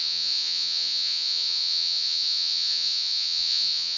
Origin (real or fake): fake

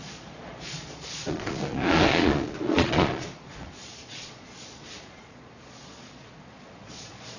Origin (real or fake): fake